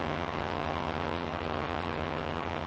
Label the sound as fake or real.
fake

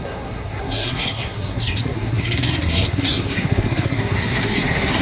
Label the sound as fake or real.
fake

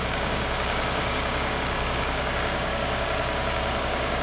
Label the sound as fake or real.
fake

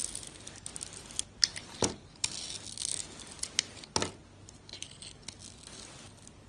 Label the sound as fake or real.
real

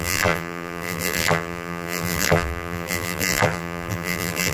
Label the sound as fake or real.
fake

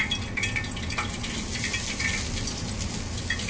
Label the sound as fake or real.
real